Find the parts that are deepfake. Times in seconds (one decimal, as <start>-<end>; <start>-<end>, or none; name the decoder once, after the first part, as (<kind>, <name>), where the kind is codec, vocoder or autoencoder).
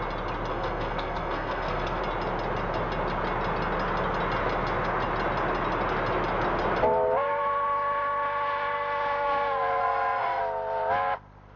0.5-2.0 (codec, SNAC); 9.8-10.4